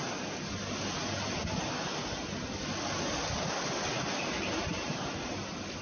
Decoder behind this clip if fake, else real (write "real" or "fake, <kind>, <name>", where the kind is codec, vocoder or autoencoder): real